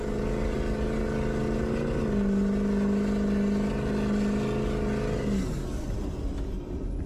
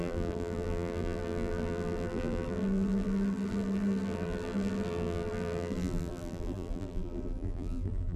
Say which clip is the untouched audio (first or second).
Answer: first